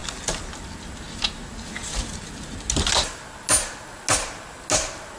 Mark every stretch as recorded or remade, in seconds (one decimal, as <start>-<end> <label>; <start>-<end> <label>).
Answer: 0.0-5.2 recorded